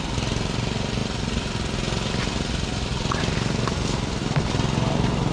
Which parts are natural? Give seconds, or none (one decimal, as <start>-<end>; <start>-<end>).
0.0-5.3